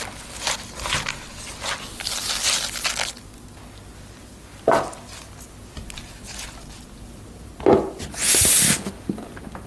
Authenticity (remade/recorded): recorded